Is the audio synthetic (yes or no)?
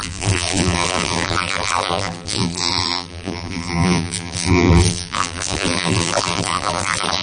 yes